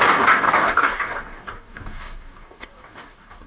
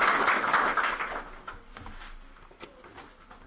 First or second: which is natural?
second